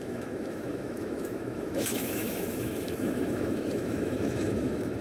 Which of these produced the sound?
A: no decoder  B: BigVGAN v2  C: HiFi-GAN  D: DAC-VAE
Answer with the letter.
D